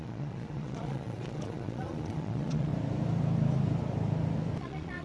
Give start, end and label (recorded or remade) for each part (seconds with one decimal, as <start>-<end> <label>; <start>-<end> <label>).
0.0-2.7 remade; 2.7-4.6 recorded; 4.6-5.0 remade